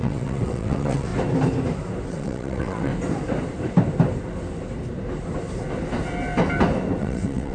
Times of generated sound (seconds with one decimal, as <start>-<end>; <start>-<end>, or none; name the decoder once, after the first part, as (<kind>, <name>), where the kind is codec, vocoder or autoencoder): 0.0-1.1 (vocoder, WaveNeXt); 2.1-2.9; 7.0-7.5

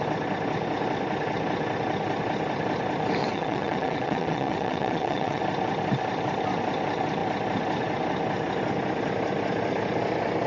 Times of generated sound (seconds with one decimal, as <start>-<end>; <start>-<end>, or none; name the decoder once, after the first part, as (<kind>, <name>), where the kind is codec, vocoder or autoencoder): 3.2-5.4 (vocoder, WaveNeXt)

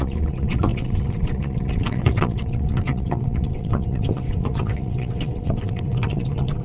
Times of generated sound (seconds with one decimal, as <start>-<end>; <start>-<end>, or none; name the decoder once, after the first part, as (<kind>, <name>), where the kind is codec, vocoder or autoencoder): 0.0-6.6 (vocoder, WaveNeXt)

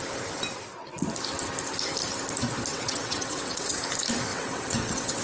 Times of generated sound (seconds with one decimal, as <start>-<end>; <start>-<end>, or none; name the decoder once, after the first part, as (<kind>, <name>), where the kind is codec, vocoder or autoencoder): 2.7-3.8 (vocoder, WaveNeXt); 4.3-5.2